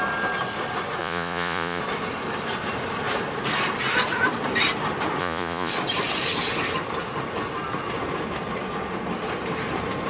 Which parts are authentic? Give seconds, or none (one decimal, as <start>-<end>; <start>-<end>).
0.0-1.0; 1.8-5.2; 5.7-10.1